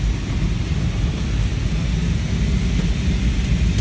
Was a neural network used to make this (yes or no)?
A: no